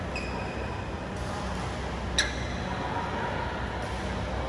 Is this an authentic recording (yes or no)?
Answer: yes